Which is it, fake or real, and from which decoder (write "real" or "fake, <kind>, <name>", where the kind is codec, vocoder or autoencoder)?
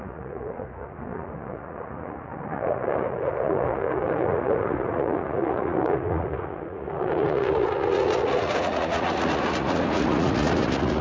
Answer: fake, vocoder, Vocos